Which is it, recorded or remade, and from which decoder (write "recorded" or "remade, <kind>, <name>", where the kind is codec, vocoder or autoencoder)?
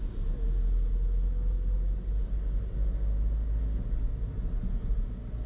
recorded